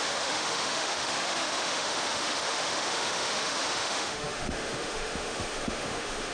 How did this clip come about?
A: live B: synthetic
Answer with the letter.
B